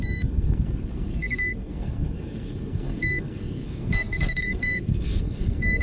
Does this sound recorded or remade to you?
remade